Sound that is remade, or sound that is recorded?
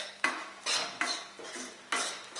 recorded